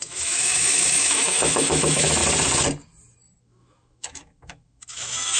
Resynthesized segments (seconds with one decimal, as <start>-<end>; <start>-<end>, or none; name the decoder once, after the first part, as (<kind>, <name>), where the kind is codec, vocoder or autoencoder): 0.0-2.2 (autoencoder, DAC-VAE); 3.4-5.4